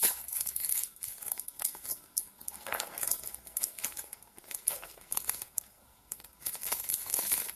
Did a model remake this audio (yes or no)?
yes